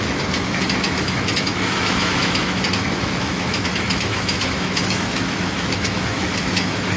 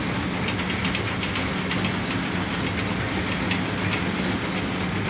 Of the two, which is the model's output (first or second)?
first